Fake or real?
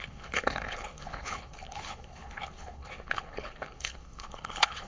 fake